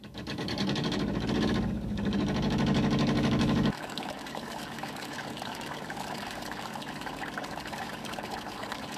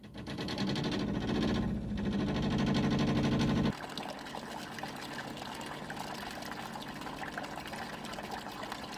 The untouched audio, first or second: second